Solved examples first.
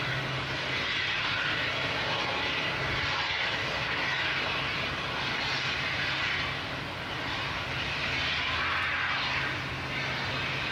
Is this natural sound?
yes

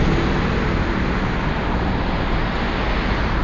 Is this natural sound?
yes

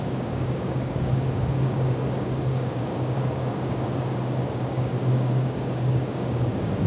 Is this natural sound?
no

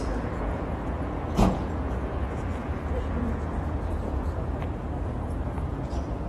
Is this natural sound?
no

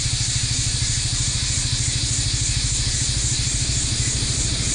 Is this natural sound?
no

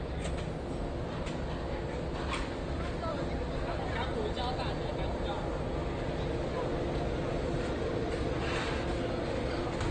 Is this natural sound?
yes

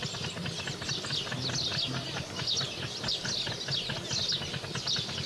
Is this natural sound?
yes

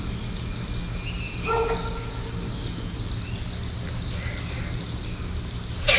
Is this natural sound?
yes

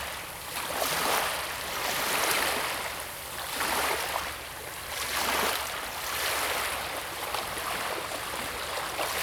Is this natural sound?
yes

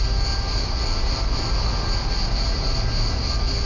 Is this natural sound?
yes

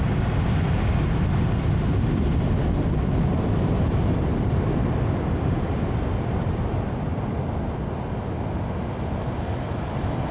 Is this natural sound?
yes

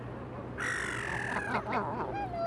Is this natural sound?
yes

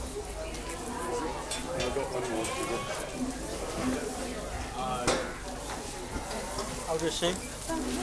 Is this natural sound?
yes